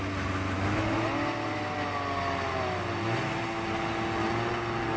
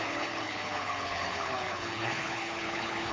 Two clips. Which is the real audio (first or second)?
first